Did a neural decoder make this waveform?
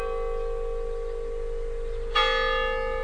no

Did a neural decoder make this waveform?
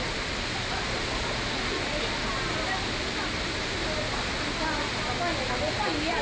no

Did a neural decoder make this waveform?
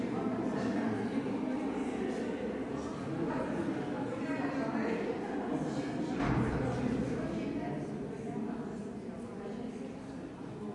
no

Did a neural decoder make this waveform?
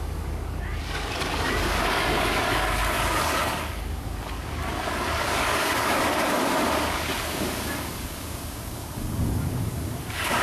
yes